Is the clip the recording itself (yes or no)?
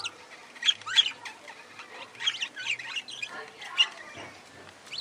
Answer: yes